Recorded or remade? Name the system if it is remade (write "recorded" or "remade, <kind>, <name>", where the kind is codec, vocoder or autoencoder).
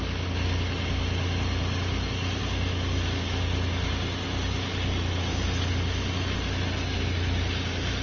recorded